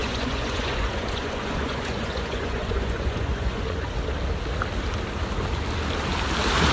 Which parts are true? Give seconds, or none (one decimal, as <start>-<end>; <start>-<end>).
3.9-6.7